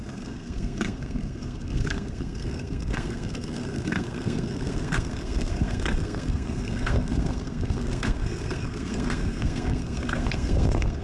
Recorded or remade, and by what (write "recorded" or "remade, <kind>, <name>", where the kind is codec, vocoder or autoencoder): remade, codec, SNAC